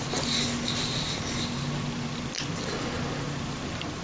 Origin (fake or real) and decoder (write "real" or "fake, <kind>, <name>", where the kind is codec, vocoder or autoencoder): real